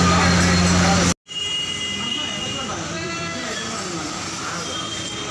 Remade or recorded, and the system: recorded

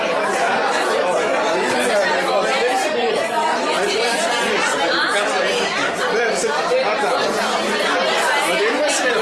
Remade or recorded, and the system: recorded